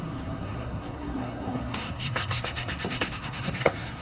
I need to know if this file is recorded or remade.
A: remade